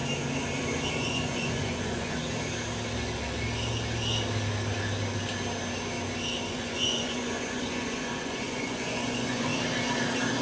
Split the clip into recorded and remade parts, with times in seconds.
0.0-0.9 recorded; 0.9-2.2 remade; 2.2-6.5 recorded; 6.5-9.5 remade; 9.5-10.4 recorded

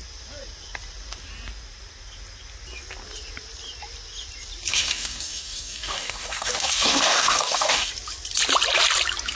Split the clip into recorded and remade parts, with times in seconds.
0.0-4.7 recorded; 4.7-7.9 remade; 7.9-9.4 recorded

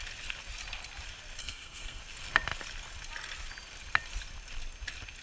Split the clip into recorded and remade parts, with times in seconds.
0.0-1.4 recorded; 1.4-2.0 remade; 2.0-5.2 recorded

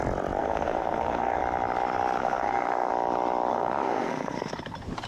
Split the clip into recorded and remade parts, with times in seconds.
0.0-0.4 recorded; 0.4-1.4 remade; 1.4-2.2 recorded; 2.2-2.9 remade; 2.9-3.5 recorded; 3.5-4.5 remade; 4.5-5.1 recorded

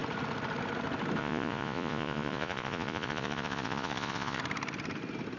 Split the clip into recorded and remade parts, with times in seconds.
0.0-1.2 recorded; 1.2-4.4 remade; 4.4-5.4 recorded

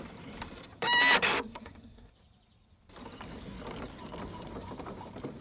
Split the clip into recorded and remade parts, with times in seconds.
0.0-1.2 recorded; 1.2-2.1 remade; 2.1-5.4 recorded